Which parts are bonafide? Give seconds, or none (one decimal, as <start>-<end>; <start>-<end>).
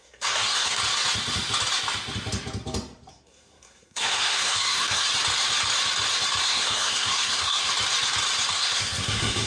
0.8-3.1; 5.0-6.4; 7.7-8.5